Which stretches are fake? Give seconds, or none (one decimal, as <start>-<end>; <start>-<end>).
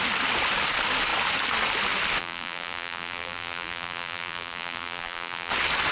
2.2-5.5